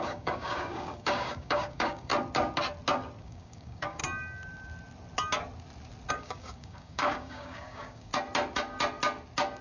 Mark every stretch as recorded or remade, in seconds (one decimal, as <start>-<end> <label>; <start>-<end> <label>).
0.0-2.1 remade; 2.1-3.2 recorded; 3.2-4.0 remade; 4.0-6.1 recorded; 6.1-8.1 remade; 8.1-9.6 recorded